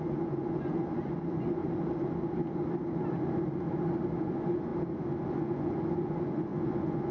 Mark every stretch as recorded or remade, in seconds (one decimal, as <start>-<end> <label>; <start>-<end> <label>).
0.0-1.6 remade; 1.6-4.2 recorded; 4.2-4.7 remade; 4.7-5.4 recorded; 5.4-7.1 remade